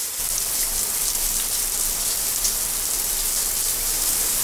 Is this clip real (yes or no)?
yes